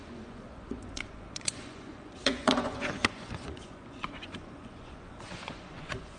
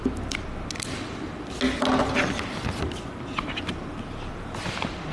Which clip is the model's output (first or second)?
first